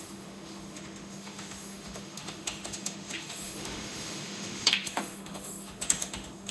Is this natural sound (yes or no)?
no